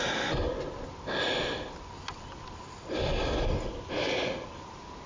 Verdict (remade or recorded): recorded